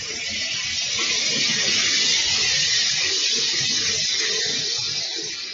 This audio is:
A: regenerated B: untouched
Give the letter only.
B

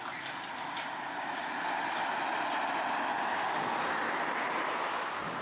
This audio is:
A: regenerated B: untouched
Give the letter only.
B